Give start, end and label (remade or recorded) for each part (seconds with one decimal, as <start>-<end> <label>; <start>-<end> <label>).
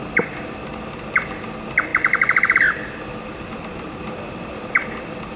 0.0-1.0 remade; 1.0-1.9 recorded; 1.9-5.4 remade